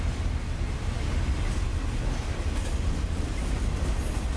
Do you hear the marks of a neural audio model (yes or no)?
no